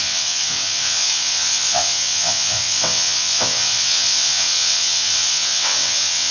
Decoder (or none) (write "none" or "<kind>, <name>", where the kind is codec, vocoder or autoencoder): vocoder, WaveNeXt